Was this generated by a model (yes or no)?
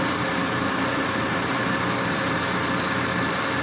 no